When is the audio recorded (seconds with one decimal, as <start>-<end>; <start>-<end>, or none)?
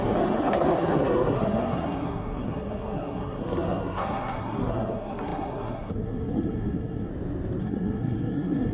7.1-7.6